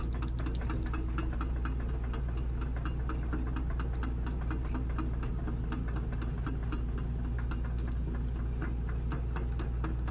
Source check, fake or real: real